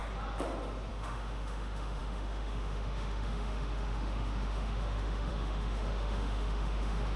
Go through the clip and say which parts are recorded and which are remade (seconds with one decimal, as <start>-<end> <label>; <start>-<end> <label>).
0.0-0.9 recorded; 0.9-7.2 remade